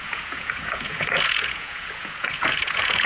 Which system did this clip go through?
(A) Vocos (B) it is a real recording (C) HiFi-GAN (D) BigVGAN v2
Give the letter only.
A